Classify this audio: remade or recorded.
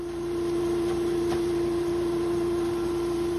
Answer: remade